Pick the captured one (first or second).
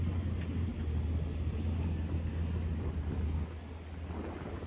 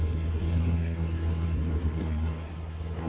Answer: first